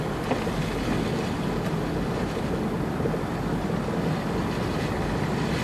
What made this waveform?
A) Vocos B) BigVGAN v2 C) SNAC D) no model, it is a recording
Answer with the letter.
D